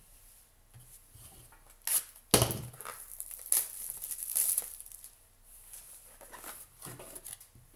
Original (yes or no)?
yes